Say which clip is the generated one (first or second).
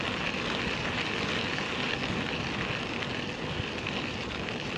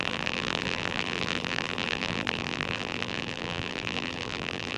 second